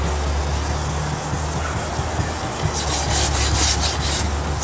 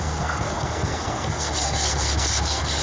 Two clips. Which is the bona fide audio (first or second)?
first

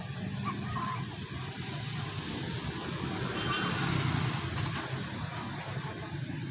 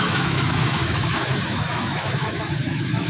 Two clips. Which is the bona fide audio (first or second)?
first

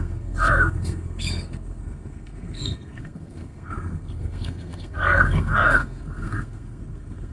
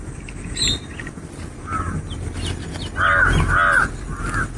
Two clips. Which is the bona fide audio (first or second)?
second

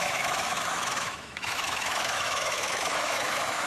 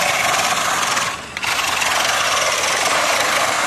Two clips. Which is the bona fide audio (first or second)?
second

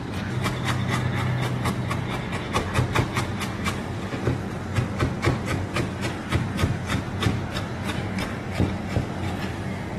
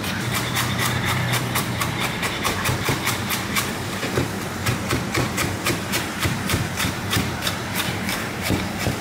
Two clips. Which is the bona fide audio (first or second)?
first